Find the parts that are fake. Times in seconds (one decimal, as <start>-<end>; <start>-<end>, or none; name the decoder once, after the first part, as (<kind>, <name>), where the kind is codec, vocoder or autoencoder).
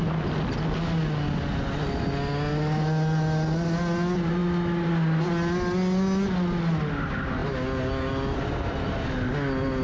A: none